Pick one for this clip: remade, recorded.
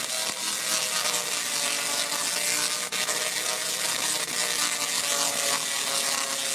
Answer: recorded